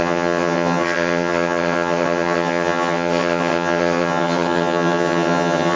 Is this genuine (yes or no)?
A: no